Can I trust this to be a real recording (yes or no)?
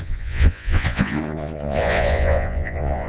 no